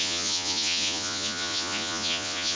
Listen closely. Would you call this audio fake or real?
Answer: fake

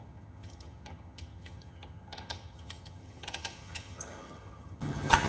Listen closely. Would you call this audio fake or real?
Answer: fake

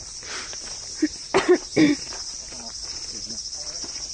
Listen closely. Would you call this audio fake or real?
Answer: real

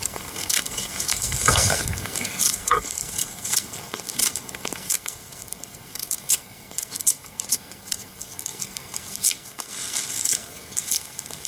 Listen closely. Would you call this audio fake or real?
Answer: fake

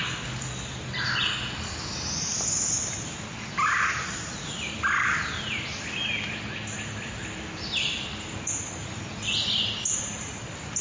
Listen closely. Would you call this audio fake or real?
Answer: real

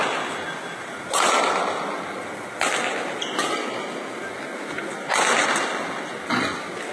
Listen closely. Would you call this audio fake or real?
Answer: real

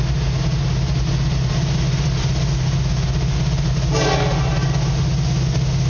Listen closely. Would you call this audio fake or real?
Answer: real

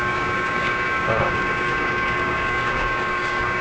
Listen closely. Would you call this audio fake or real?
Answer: fake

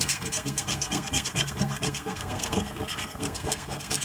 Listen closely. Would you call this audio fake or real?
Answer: fake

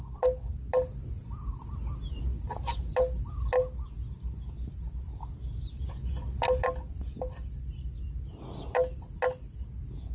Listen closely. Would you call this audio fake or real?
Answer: real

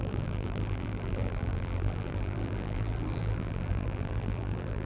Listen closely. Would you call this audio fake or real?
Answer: fake